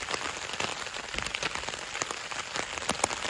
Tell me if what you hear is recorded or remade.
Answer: recorded